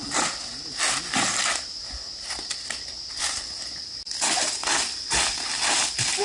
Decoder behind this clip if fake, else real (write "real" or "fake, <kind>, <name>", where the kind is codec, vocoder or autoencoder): real